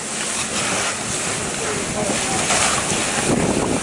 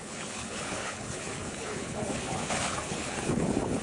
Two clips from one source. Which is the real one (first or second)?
first